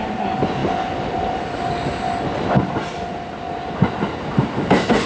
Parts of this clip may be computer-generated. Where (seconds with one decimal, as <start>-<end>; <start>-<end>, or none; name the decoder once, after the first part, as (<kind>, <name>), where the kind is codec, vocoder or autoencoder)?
none